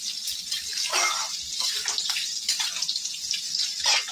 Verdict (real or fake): real